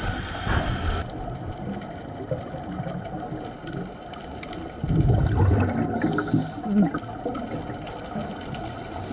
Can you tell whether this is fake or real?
real